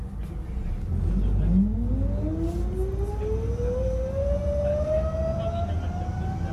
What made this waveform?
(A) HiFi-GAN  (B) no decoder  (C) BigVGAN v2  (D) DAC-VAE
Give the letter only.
B